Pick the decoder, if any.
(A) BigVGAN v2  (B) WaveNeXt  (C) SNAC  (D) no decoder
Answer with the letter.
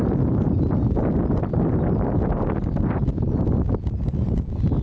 D